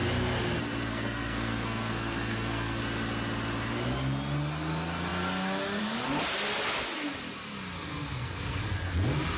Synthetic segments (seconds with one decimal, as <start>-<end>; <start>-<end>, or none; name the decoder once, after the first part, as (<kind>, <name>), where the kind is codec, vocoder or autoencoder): 0.9-2.8 (codec, SNAC); 7.9-8.6

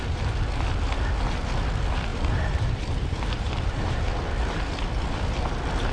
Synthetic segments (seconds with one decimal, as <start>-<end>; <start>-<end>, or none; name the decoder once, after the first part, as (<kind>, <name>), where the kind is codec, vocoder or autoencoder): 2.1-4.0 (vocoder, BigVGAN v2)

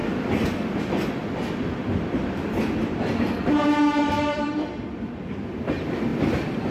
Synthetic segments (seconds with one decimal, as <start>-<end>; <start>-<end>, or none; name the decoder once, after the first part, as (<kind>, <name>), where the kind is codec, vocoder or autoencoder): 0.8-2.8 (vocoder, BigVGAN v2); 4.0-6.7

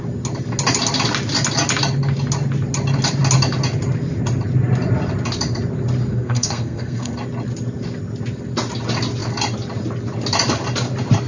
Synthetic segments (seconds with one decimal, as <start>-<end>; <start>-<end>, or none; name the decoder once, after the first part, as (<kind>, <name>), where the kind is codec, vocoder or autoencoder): 6.1-7.1 (codec, SNAC)

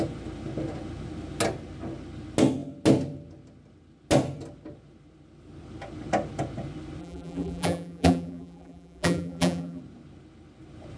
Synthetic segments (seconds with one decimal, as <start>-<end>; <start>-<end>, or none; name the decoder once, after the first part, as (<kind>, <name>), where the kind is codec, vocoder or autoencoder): 7.0-9.8 (vocoder, BigVGAN v2)

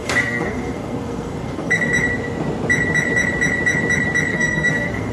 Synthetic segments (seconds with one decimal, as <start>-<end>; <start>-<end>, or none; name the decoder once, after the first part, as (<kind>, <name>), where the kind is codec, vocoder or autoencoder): 0.0-1.9 (codec, SNAC); 4.3-5.1

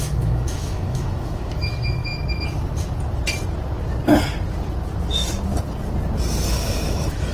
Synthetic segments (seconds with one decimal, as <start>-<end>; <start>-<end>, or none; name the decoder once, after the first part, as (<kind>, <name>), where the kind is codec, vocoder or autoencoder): 0.0-2.1 (autoencoder, DAC-VAE); 6.5-7.3